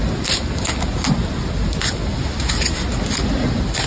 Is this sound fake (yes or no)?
no